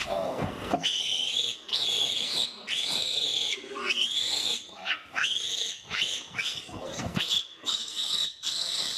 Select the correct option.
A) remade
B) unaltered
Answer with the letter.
A